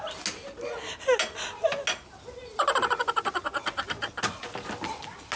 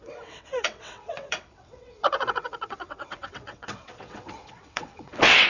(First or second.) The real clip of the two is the first